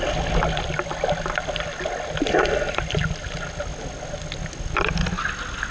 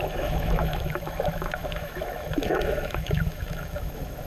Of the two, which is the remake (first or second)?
second